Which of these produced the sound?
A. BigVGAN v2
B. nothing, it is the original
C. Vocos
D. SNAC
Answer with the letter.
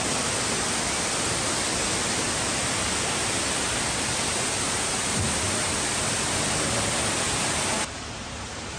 B